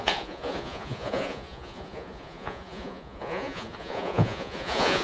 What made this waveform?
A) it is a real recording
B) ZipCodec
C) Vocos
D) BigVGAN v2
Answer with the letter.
C